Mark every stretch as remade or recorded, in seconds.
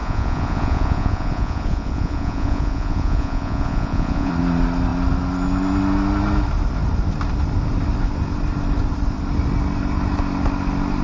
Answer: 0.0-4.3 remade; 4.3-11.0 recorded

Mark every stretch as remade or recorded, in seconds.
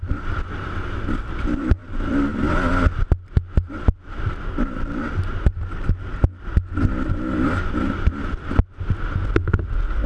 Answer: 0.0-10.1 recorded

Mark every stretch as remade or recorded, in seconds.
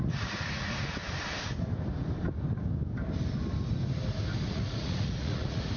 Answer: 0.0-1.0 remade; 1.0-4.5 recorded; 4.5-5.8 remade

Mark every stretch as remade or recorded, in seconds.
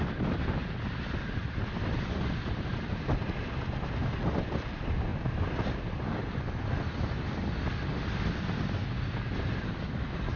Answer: 0.0-10.4 recorded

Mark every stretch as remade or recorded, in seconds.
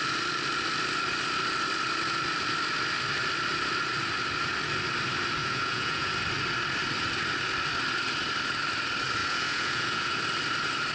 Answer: 0.0-5.4 recorded; 5.4-6.1 remade; 6.1-9.2 recorded; 9.2-10.2 remade; 10.2-10.9 recorded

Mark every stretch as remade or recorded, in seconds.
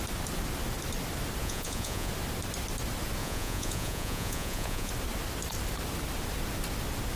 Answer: 0.0-1.4 recorded; 1.4-2.1 remade; 2.1-3.2 recorded; 3.2-4.9 remade; 4.9-7.2 recorded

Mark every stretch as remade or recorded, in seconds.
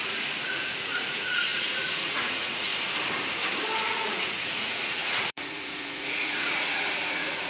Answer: 0.0-2.7 remade; 2.7-3.8 recorded; 3.8-7.5 remade